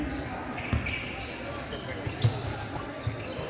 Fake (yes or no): no